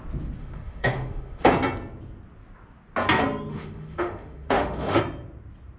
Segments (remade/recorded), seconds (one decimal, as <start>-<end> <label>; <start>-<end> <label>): 0.0-0.4 recorded; 0.4-1.5 remade; 1.5-3.5 recorded; 3.5-5.0 remade; 5.0-5.8 recorded